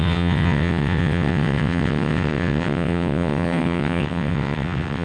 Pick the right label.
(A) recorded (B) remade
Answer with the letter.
B